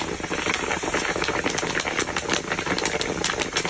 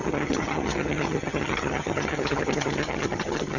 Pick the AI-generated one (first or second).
second